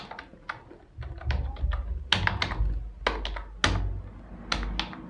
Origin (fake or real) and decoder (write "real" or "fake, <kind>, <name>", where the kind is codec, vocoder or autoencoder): real